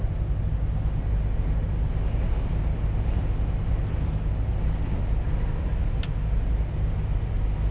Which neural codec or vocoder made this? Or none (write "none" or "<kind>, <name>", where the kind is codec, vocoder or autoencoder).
none